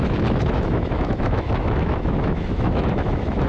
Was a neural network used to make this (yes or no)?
yes